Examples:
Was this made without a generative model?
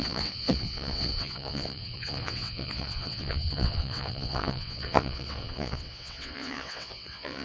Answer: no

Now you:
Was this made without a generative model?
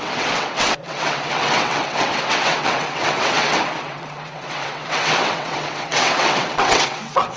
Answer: no